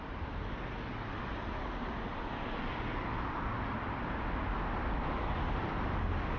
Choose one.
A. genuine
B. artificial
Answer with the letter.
A